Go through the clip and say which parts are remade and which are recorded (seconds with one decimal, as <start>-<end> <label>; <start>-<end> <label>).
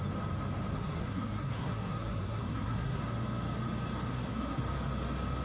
0.0-0.7 recorded; 0.7-3.0 remade; 3.0-4.1 recorded; 4.1-4.6 remade; 4.6-5.4 recorded